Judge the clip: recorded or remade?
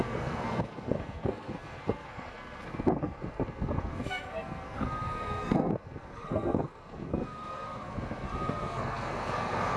remade